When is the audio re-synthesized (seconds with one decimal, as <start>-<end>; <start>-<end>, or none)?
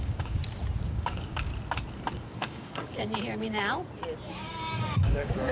0.0-0.4; 0.9-1.5; 2.1-2.9; 4.3-5.5